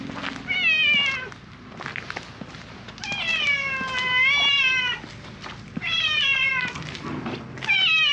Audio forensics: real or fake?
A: real